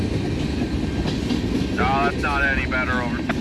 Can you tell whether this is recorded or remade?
recorded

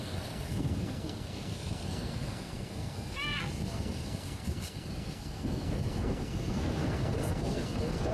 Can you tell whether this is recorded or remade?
remade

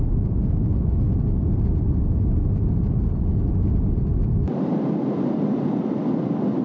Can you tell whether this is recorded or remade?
recorded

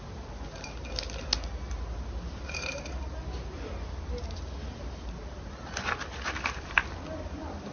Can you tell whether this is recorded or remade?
recorded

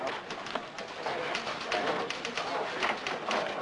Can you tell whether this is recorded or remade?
recorded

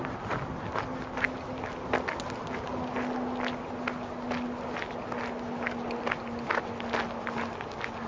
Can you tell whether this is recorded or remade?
recorded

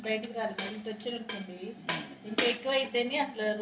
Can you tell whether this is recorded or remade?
recorded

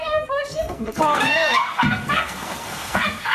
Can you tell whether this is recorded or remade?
remade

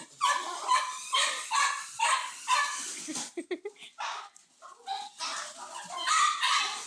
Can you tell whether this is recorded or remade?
recorded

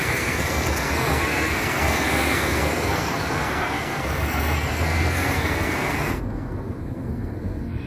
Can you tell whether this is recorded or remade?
remade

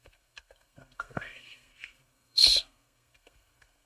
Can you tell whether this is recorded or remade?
remade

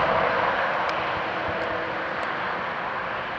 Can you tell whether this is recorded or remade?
recorded